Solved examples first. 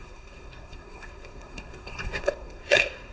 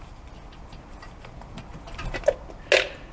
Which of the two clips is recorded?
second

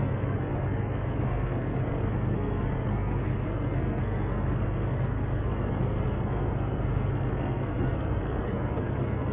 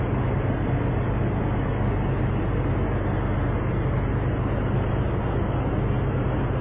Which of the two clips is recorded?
second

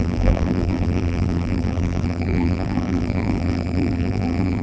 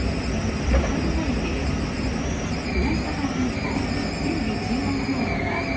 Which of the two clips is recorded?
second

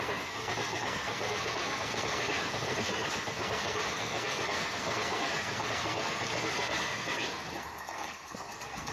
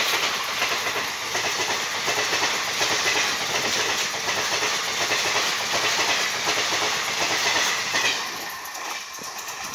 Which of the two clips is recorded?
second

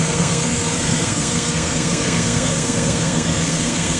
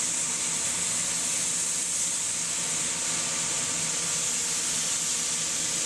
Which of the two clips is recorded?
second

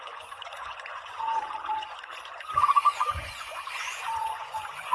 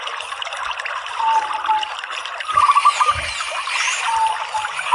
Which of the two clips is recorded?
second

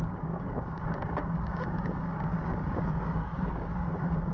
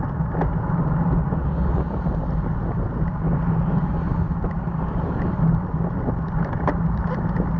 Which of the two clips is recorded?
second